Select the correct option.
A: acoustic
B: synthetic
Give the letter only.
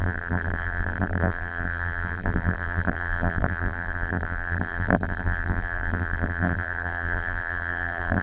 B